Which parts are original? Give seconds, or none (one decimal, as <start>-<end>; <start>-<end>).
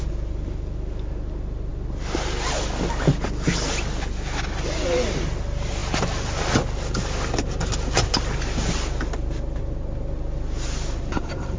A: 0.0-11.6